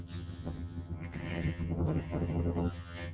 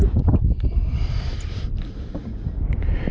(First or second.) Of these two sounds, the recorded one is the second